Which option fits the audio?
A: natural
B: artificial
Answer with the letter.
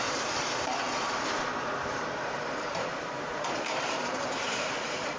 B